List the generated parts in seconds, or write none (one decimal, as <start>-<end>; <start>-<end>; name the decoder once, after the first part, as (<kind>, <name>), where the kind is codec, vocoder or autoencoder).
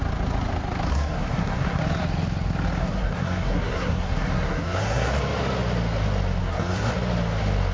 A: 0.9-1.8 (codec, SNAC); 2.8-5.1; 6.4-6.9